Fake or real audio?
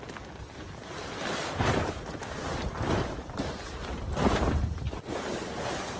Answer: real